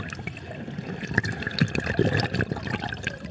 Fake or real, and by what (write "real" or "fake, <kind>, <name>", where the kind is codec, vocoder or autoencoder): real